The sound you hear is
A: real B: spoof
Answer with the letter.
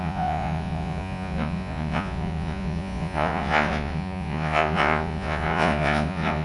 B